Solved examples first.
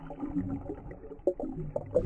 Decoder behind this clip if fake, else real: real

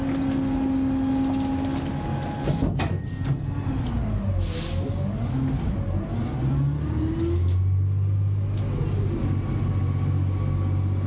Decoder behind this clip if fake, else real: real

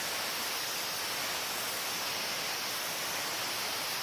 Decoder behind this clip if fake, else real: real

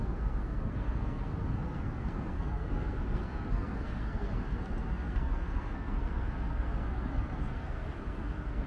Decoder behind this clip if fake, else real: fake, codec, SNAC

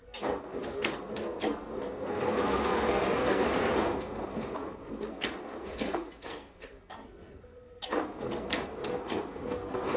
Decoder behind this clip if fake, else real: fake, codec, SNAC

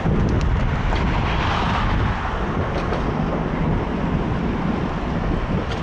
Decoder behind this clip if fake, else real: real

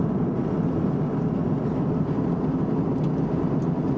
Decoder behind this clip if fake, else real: real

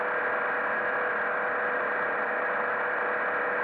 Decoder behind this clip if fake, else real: real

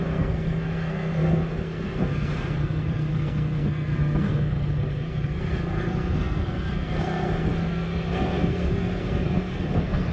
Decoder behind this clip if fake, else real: fake, codec, SNAC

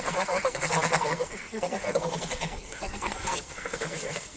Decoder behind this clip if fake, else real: fake, codec, SNAC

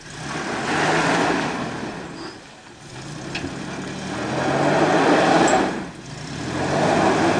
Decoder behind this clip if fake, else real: real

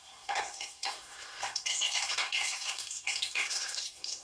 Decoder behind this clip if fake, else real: fake, codec, SNAC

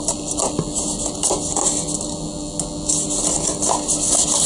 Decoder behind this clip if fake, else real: real